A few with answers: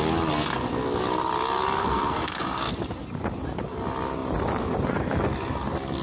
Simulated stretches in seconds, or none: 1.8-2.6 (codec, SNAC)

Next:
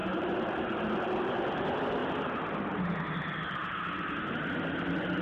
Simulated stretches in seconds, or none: none

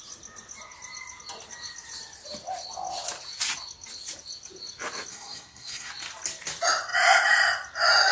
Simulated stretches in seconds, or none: 5.1-5.9 (codec, SNAC)

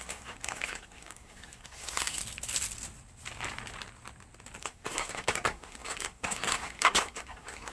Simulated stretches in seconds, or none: 0.0-2.2 (codec, SNAC); 4.6-7.7

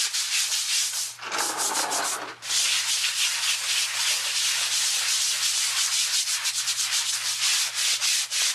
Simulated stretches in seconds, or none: none

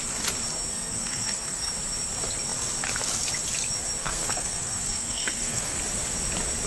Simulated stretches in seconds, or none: 0.7-1.7 (codec, SNAC); 4.0-5.8

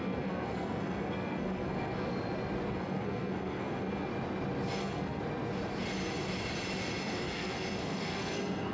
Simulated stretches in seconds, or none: 0.0-2.1 (codec, SNAC); 2.7-4.1; 4.8-5.2; 7.3-8.7

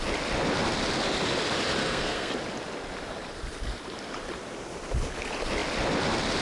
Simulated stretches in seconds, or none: 1.8-2.3 (codec, SNAC)